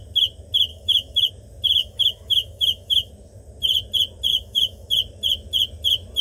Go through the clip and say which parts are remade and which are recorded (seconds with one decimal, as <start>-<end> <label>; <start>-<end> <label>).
0.0-0.7 recorded; 0.7-1.3 remade; 1.3-1.8 recorded; 1.8-3.1 remade; 3.1-4.3 recorded; 4.3-4.9 remade; 4.9-6.2 recorded